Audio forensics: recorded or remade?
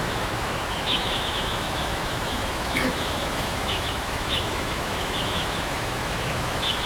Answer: remade